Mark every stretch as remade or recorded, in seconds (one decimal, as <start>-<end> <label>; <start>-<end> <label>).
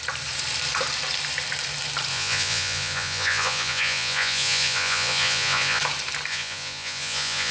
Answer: 0.0-2.1 recorded; 2.1-5.8 remade; 5.8-6.3 recorded; 6.3-7.5 remade